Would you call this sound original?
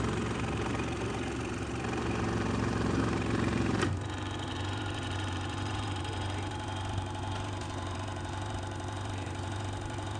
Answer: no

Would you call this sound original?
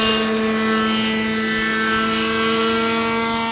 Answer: yes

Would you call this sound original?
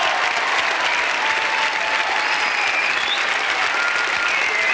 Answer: yes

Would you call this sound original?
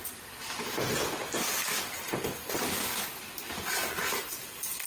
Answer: yes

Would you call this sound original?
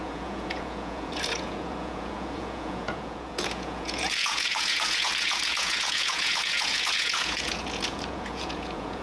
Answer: no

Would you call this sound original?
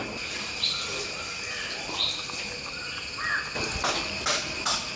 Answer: yes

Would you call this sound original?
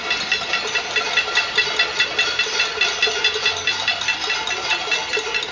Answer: yes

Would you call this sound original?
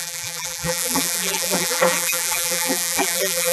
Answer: no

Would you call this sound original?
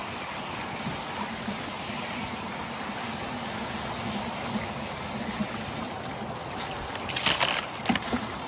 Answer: yes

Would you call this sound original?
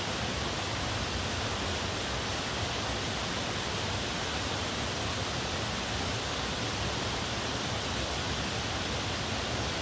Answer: yes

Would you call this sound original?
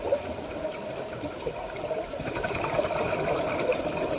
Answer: no